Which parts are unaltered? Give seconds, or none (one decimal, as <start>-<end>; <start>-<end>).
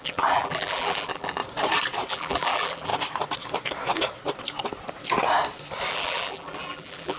1.4-2.1; 2.9-5.9